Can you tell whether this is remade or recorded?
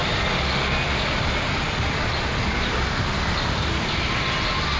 recorded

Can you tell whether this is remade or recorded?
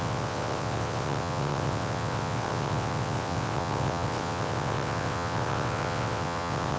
remade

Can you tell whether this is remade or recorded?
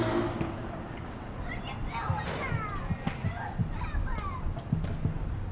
recorded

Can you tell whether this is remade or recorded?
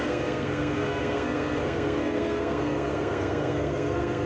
remade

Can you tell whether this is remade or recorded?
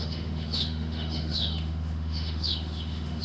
remade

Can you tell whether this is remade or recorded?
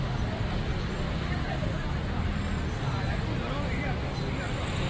recorded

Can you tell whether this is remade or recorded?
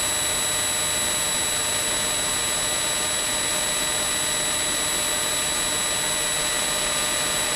recorded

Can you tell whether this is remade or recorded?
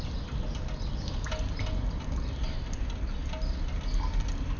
recorded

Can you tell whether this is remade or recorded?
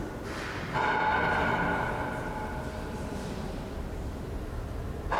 recorded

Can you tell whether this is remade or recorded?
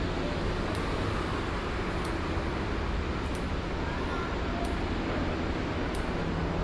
recorded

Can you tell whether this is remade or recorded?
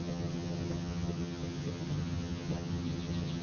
remade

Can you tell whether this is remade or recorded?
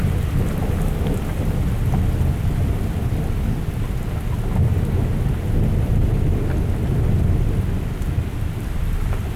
recorded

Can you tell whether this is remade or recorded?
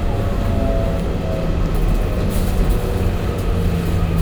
recorded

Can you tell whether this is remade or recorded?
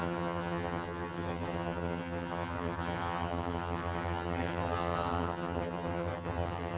remade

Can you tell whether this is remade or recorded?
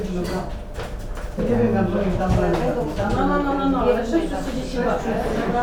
recorded